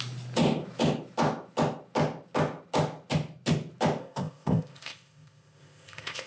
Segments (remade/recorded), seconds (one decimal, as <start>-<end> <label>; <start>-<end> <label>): 0.0-4.0 recorded; 4.0-6.3 remade